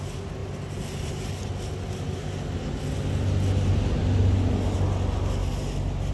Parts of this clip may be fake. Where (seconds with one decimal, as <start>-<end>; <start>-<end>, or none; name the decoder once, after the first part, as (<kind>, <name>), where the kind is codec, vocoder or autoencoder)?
none

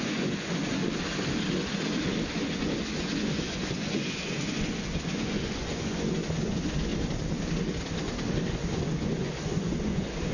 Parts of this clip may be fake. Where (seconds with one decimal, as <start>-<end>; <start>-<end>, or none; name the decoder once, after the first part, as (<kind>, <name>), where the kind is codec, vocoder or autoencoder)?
0.0-0.6 (vocoder, Vocos); 2.3-6.9; 8.6-10.3

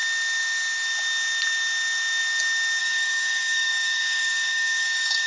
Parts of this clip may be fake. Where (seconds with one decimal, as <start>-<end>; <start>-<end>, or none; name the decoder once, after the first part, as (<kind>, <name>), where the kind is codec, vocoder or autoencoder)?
2.8-5.3 (codec, DAC)

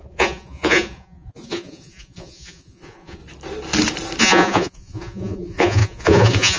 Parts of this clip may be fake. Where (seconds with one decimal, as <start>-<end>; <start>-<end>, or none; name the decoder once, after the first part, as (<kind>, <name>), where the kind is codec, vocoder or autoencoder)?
0.0-3.2 (vocoder, Vocos); 4.2-6.6